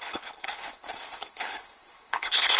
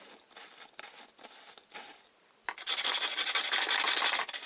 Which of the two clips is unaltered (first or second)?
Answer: second